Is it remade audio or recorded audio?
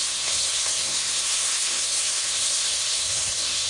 remade